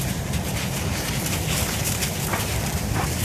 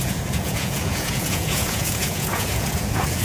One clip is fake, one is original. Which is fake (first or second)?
second